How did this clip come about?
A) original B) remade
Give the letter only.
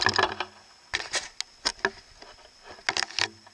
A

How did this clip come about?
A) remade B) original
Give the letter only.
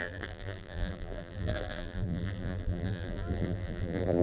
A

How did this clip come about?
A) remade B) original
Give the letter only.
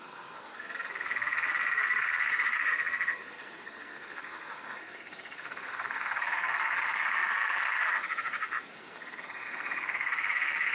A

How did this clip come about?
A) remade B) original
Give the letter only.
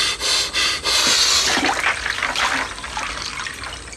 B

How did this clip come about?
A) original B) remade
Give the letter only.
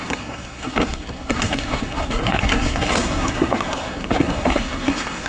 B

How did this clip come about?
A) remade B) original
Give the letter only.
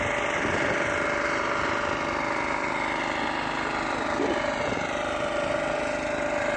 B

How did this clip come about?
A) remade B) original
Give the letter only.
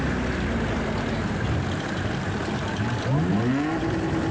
B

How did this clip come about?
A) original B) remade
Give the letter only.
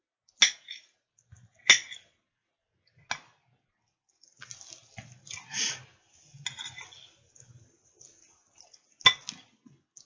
A